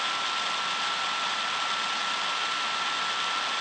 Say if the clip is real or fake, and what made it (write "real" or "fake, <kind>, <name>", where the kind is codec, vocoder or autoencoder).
real